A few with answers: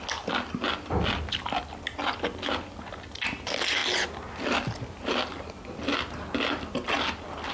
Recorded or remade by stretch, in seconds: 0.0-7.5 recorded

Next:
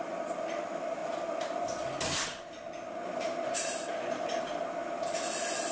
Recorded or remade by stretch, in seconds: 0.0-5.7 recorded